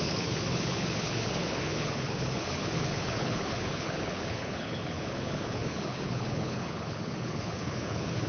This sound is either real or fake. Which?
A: fake